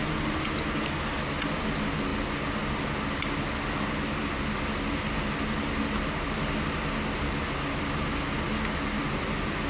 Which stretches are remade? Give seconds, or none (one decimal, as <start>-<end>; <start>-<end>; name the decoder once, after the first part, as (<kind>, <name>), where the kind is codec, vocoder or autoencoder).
none